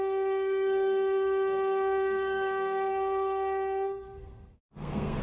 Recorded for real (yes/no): no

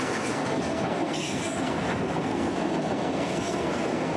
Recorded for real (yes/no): no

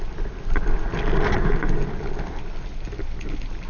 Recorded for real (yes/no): yes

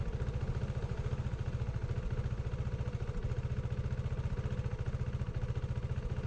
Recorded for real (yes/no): yes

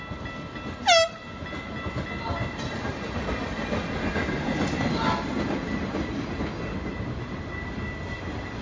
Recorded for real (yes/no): yes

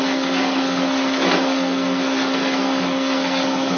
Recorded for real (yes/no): no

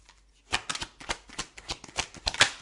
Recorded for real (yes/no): yes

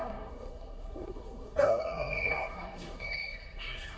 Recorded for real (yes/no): no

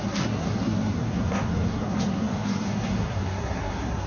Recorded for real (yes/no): no